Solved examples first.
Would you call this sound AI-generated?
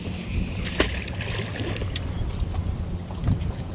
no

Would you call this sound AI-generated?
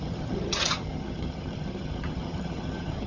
yes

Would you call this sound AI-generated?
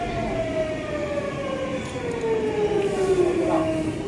no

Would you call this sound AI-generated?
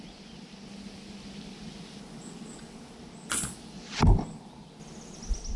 no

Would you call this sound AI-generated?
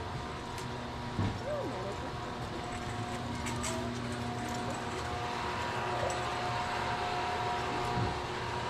no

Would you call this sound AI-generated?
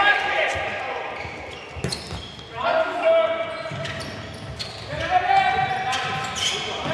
no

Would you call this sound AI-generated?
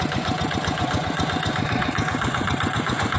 yes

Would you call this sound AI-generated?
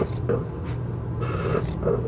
no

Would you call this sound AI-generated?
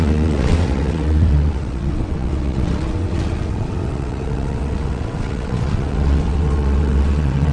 yes